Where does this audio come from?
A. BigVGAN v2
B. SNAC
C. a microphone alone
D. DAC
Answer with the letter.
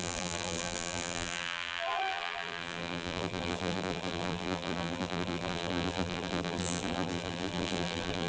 A